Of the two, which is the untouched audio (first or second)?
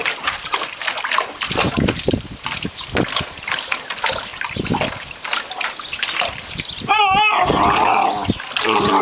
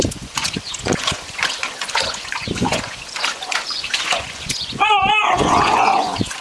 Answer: first